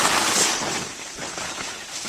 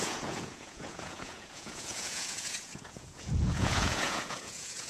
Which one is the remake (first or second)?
second